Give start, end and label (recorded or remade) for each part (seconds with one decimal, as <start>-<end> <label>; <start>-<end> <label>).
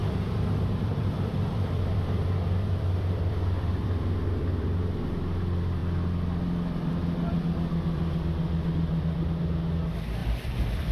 0.0-4.0 remade; 4.0-10.2 recorded; 10.2-10.9 remade